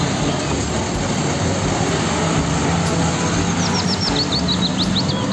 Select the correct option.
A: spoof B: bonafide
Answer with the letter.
B